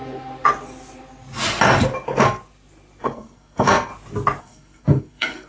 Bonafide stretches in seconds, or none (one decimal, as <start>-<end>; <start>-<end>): 0.0-3.0; 3.9-4.4